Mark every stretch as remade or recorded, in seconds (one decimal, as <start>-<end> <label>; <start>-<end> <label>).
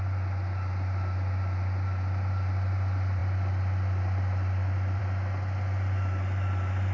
0.0-6.9 recorded